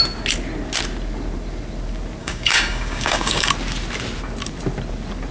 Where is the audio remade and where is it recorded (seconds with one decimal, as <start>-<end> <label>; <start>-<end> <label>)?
0.0-2.2 recorded; 2.2-3.5 remade; 3.5-5.3 recorded